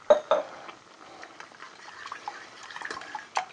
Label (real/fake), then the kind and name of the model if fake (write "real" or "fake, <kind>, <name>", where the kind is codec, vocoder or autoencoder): real